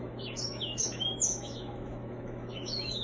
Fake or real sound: fake